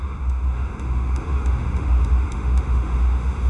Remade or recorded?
remade